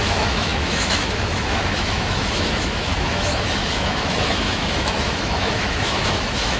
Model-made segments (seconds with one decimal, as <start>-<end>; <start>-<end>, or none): 0.0-6.6